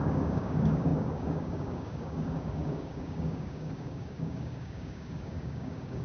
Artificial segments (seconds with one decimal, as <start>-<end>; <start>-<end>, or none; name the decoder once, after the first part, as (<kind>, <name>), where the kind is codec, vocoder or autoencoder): 0.0-6.0 (codec, DAC)

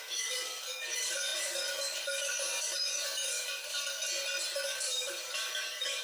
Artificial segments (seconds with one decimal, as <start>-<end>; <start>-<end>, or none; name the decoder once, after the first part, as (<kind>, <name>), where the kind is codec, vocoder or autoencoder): 0.0-4.0 (codec, DAC); 4.5-6.0

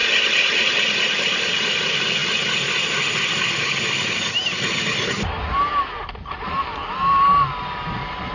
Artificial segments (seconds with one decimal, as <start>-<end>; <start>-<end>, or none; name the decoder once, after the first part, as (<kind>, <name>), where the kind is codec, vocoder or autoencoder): none

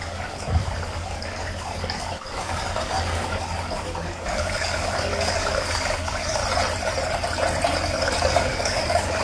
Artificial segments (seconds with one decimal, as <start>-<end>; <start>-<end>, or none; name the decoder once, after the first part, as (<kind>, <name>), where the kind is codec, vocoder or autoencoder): 0.0-6.4 (codec, DAC); 8.0-9.2

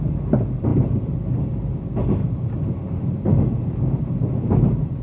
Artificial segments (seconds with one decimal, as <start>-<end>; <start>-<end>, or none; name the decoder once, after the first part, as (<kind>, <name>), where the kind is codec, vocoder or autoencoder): none

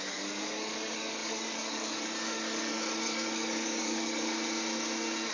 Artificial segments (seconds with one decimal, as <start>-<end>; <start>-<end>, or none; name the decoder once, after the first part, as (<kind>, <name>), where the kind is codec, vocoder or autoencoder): 0.0-4.3 (codec, DAC)

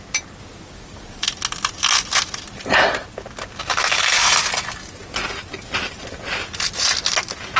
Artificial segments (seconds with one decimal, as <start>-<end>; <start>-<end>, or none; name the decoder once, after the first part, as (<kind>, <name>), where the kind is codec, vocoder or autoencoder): none